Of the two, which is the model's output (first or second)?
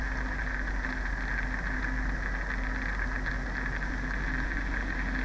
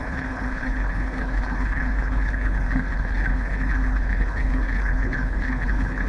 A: second